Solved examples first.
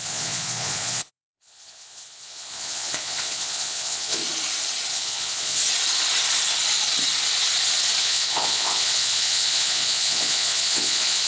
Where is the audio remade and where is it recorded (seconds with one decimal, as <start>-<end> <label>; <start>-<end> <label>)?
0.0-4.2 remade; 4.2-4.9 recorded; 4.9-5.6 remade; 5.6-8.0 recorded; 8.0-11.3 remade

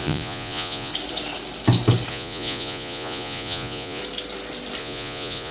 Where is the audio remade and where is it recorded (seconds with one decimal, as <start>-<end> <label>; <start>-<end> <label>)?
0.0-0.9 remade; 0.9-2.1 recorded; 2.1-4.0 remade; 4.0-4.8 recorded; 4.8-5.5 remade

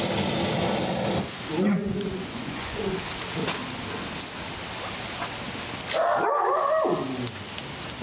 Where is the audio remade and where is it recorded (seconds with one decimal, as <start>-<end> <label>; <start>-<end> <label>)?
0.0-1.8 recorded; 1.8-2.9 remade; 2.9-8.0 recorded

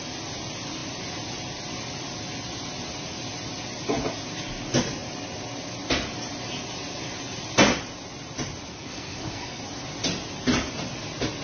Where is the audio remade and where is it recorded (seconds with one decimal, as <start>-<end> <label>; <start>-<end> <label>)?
0.0-8.7 recorded; 8.7-9.6 remade; 9.6-11.4 recorded

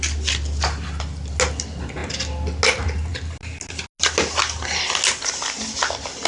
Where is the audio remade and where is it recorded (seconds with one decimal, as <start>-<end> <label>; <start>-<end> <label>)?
0.0-6.3 recorded

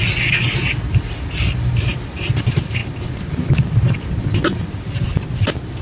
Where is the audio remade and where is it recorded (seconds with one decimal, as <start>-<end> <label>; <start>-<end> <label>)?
0.0-5.8 recorded